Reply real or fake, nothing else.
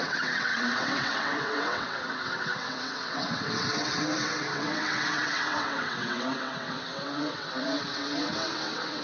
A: fake